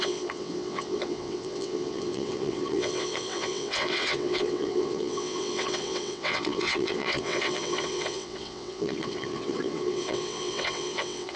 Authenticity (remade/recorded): remade